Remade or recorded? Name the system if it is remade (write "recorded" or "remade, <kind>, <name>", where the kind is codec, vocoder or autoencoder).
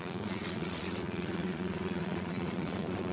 remade, vocoder, Vocos